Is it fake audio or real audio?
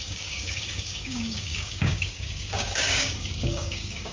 fake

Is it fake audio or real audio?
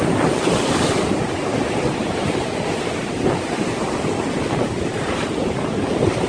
real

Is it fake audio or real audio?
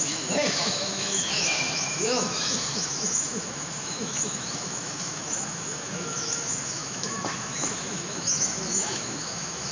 fake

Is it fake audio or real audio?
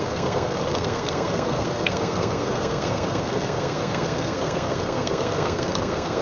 fake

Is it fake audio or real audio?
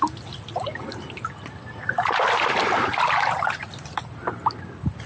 real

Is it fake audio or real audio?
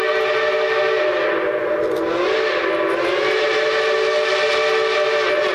real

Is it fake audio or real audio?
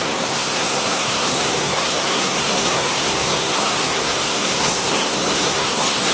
fake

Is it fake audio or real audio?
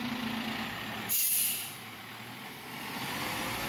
real